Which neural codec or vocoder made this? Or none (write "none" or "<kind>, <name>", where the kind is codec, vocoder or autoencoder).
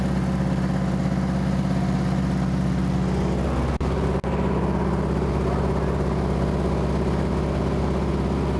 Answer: none